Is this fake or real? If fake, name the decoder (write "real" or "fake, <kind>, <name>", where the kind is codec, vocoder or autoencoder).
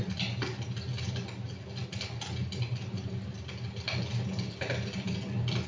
real